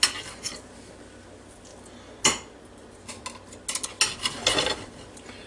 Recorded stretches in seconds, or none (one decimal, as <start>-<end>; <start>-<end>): 0.0-5.5